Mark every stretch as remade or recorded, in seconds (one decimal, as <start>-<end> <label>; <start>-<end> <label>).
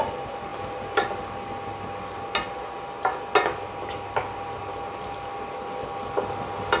0.0-6.8 recorded